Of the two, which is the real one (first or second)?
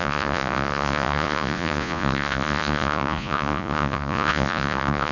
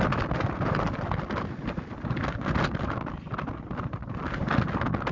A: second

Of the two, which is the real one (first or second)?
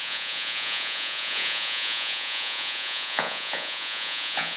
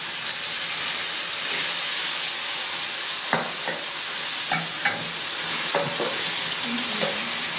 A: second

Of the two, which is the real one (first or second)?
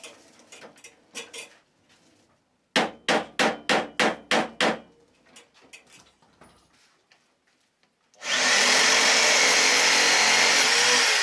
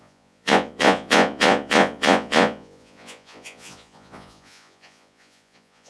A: first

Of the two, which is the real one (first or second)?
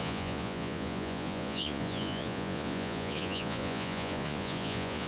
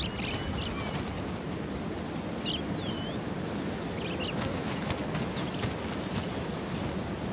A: second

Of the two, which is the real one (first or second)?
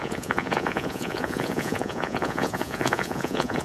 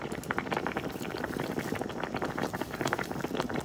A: second